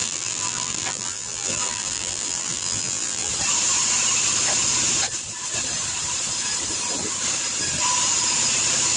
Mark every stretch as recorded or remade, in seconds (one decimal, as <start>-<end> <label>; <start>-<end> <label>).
0.0-3.3 remade; 3.3-9.0 recorded